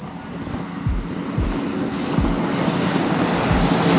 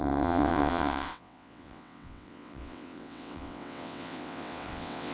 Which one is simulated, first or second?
second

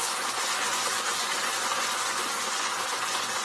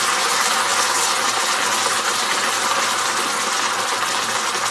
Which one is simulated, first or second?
first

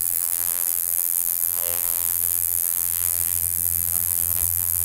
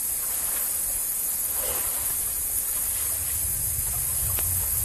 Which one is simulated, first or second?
first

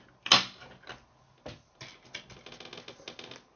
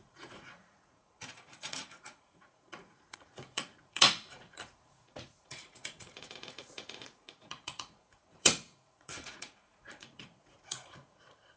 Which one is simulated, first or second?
second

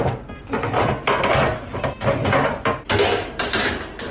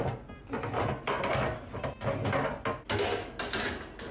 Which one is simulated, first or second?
first